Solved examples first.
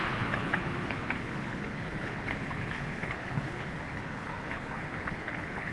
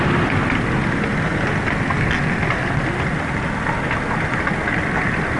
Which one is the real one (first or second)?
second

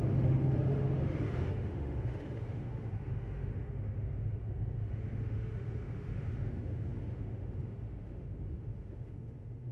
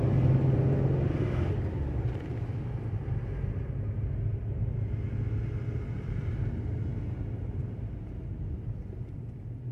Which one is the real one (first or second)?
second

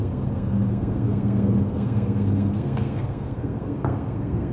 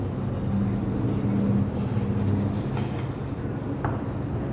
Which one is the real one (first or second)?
second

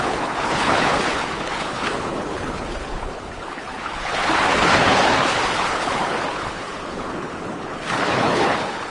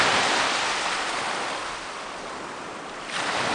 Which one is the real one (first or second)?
second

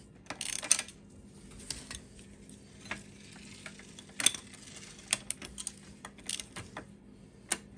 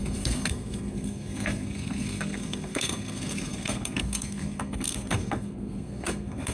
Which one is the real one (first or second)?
first